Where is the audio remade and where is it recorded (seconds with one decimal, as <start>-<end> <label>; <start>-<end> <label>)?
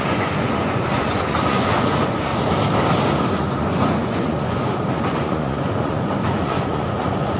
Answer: 0.0-2.3 remade; 2.3-3.3 recorded; 3.3-7.4 remade